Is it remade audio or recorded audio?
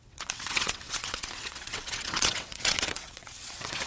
remade